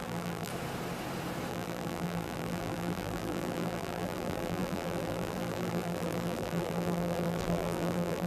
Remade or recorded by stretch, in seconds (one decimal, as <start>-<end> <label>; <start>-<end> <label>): 0.0-0.5 remade; 0.5-1.5 recorded; 1.5-8.3 remade